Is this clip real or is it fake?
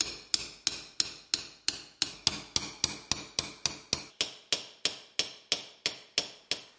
real